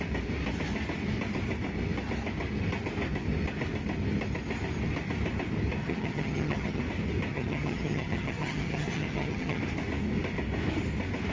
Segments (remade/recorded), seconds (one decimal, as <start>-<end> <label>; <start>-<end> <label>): 0.0-5.8 recorded; 5.8-6.8 remade; 6.8-7.3 recorded; 7.3-9.6 remade; 9.6-11.3 recorded